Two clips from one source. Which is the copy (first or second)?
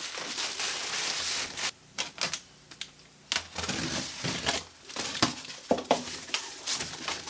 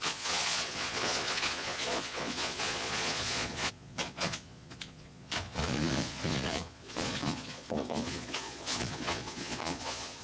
second